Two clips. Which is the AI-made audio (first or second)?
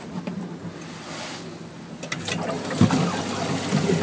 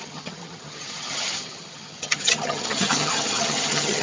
second